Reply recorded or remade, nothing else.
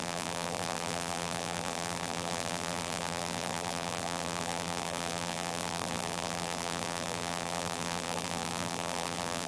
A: remade